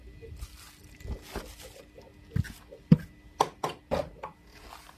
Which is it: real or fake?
real